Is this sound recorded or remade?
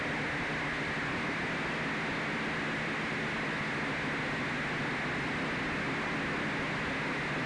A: recorded